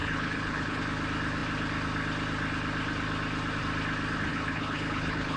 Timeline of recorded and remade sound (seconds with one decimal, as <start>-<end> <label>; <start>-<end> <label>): 0.0-0.8 remade; 0.8-4.3 recorded; 4.3-5.4 remade